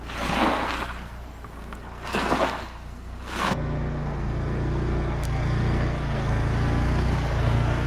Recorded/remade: remade